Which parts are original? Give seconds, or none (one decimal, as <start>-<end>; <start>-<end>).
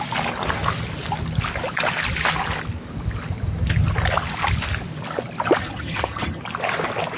0.0-5.6; 6.4-7.2